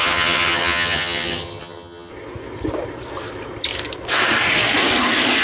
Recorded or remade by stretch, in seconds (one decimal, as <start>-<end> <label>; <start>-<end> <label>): 0.0-2.1 remade; 2.1-5.4 recorded